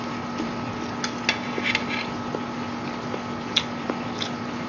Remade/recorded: recorded